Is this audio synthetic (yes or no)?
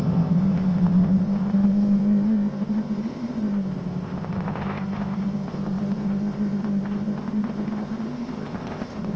yes